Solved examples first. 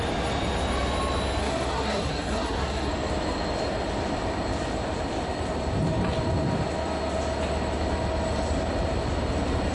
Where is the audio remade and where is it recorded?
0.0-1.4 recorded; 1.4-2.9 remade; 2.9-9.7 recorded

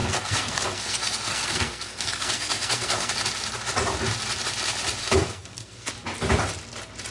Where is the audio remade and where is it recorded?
0.0-3.1 remade; 3.1-5.0 recorded; 5.0-5.9 remade; 5.9-7.1 recorded

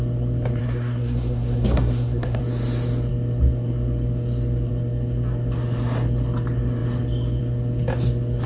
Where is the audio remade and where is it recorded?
0.0-0.6 recorded; 0.6-2.4 remade; 2.4-8.5 recorded

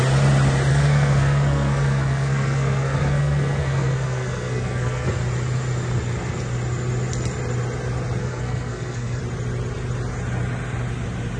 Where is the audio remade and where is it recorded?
0.0-0.7 recorded; 0.7-5.1 remade; 5.1-8.2 recorded; 8.2-9.2 remade; 9.2-11.4 recorded

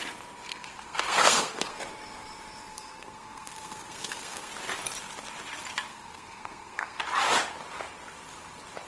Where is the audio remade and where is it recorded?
0.0-0.5 recorded; 0.5-1.8 remade; 1.8-2.7 recorded; 2.7-4.5 remade; 4.5-5.9 recorded; 5.9-7.0 remade; 7.0-8.9 recorded

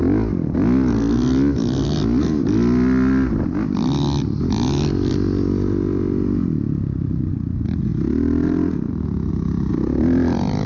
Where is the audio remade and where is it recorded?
0.0-10.7 recorded